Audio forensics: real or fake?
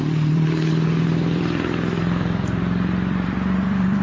fake